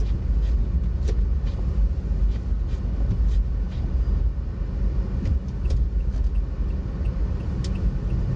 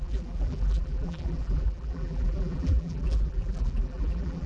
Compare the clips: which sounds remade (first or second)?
second